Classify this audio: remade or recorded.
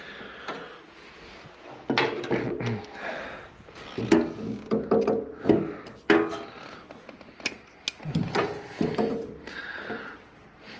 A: recorded